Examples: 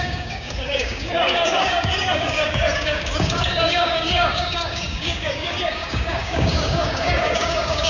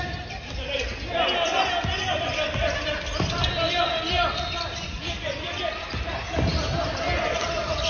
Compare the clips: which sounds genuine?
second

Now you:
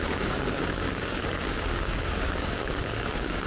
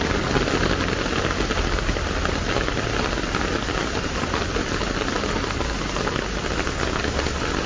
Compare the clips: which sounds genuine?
second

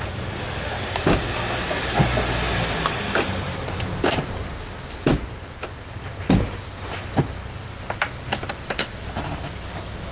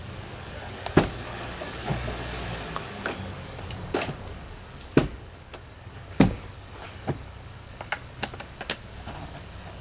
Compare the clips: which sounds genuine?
first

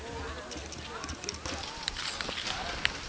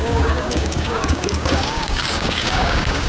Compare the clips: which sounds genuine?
first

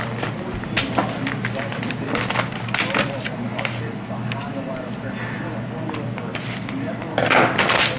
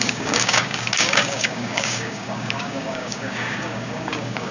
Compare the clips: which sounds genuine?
first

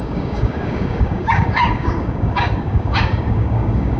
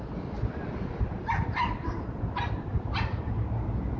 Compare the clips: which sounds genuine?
second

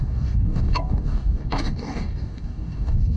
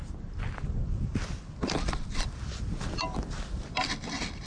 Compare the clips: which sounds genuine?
second